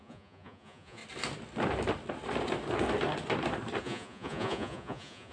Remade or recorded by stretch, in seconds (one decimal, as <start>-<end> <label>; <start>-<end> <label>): 0.0-1.0 remade; 1.0-3.8 recorded; 3.8-5.3 remade